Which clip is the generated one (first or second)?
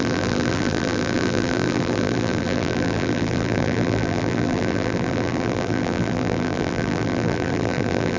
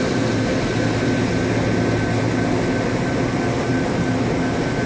first